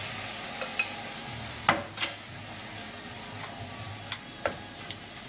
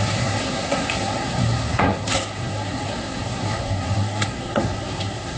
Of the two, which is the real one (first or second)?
first